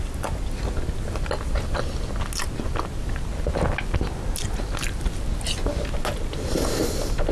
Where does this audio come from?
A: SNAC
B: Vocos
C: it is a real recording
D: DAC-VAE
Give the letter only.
C